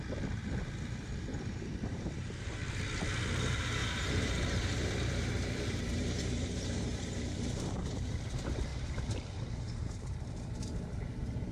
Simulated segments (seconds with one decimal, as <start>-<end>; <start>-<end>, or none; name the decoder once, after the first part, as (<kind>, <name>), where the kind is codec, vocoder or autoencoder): 0.0-2.6 (vocoder, BigVGAN v2); 3.4-11.5